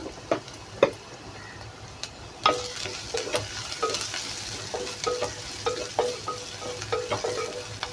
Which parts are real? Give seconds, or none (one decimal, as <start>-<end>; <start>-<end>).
0.0-7.9